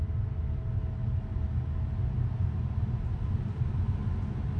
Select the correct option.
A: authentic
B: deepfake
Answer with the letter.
A